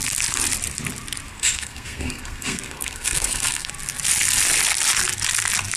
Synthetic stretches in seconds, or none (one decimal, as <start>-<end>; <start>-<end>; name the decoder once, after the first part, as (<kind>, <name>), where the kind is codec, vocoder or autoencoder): 1.3-3.7 (codec, SNAC)